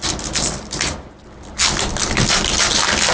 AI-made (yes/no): no